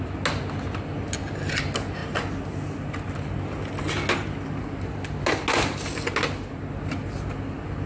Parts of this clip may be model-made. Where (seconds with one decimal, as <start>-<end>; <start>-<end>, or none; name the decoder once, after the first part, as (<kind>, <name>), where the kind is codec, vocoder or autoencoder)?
none